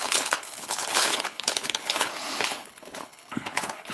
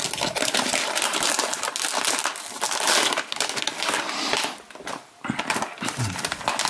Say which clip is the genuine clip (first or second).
second